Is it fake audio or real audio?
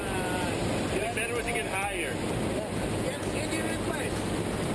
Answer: real